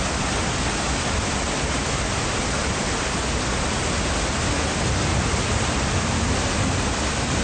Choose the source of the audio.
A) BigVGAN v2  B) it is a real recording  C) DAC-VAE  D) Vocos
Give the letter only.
B